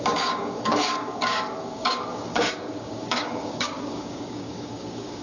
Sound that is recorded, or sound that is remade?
remade